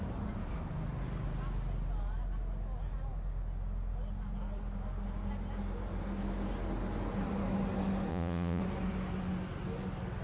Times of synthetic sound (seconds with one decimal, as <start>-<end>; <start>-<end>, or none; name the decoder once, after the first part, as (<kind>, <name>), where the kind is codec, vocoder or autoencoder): 8.1-8.6 (vocoder, Vocos)